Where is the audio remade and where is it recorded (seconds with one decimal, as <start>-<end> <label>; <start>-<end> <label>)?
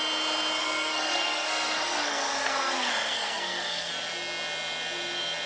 0.0-0.6 recorded; 0.6-3.9 remade; 3.9-5.5 recorded